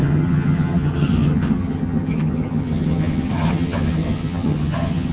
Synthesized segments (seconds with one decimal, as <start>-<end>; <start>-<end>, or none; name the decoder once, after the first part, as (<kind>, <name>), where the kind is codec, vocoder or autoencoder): 0.0-5.1 (vocoder, HiFi-GAN)